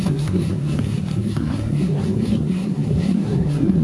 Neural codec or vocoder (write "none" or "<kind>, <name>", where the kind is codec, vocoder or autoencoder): codec, SNAC